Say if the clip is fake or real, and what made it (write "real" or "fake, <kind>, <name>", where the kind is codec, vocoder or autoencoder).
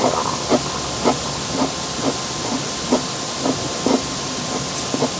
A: real